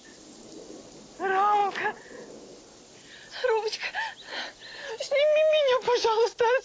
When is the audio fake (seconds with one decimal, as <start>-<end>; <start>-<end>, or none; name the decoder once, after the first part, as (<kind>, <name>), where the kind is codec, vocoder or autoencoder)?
none